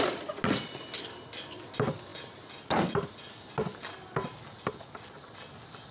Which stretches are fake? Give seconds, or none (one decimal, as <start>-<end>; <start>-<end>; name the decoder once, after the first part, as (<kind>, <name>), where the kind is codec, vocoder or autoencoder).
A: none